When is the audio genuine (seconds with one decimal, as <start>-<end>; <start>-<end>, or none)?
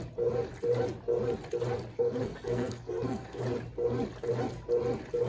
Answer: 0.0-1.9; 3.4-5.3